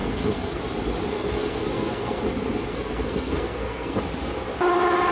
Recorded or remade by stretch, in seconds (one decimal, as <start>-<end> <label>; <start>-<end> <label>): 0.0-0.6 remade; 0.6-1.1 recorded; 1.1-2.2 remade; 2.2-2.7 recorded; 2.7-4.0 remade; 4.0-5.1 recorded